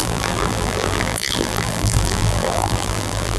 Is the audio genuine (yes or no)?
no